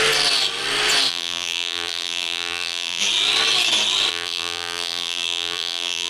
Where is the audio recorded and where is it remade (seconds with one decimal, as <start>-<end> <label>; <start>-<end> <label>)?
0.0-1.1 recorded; 1.1-3.0 remade; 3.0-4.1 recorded; 4.1-6.1 remade